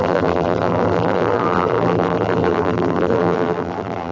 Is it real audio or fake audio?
fake